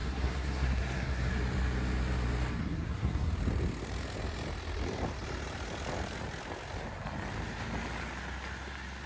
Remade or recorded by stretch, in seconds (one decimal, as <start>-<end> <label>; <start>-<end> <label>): 0.0-1.3 remade; 1.3-2.6 recorded; 2.6-3.3 remade; 3.3-9.1 recorded